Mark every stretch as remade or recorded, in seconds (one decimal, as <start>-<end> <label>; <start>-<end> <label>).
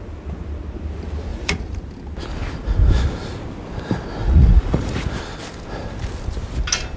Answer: 0.0-1.3 recorded; 1.3-1.8 remade; 1.8-4.2 recorded; 4.2-5.0 remade; 5.0-7.0 recorded